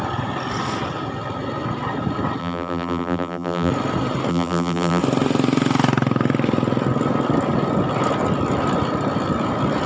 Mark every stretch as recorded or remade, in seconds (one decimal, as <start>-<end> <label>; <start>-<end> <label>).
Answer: 0.0-2.4 recorded; 2.4-3.7 remade; 3.7-4.3 recorded; 4.3-5.0 remade; 5.0-9.9 recorded